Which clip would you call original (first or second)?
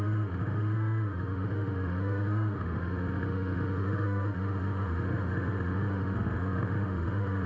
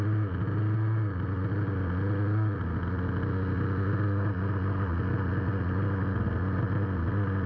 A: second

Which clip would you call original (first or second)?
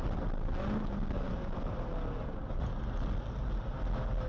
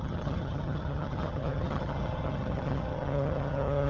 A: first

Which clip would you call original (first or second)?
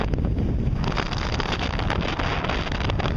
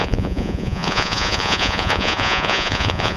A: first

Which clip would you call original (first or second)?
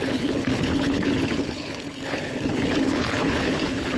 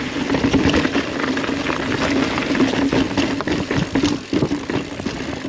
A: second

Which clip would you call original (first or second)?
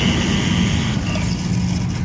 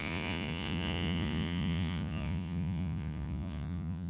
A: first